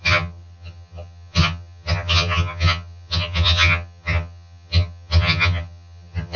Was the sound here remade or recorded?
remade